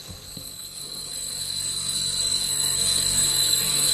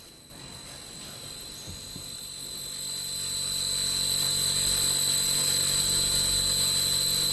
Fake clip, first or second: first